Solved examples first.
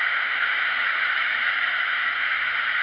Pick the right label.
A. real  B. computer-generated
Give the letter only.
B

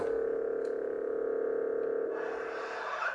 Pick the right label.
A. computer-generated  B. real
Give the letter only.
B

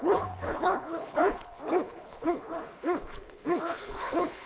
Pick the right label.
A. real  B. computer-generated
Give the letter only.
B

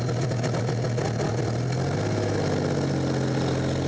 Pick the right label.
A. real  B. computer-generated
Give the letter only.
A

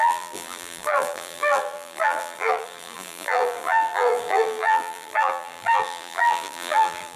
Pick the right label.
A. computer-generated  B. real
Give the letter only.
A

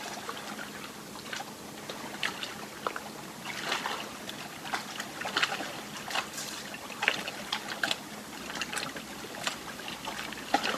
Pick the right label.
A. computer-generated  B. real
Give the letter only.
B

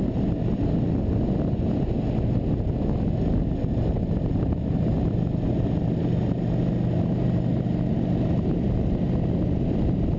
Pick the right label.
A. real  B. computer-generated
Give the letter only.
A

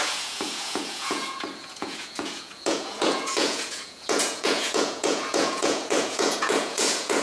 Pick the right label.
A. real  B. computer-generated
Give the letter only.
B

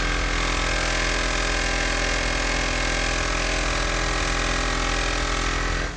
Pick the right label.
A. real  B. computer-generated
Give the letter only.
A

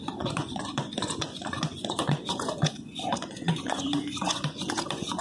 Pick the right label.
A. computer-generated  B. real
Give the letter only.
A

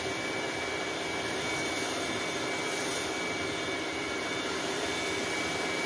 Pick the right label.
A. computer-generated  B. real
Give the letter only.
B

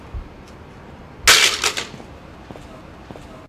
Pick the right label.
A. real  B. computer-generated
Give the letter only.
A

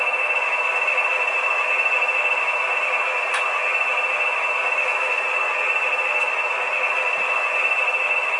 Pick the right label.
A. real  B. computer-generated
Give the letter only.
A